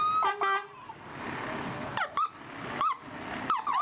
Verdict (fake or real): real